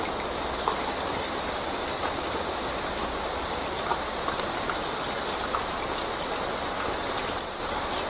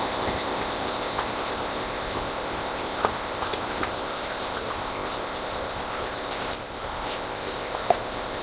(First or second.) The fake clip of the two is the second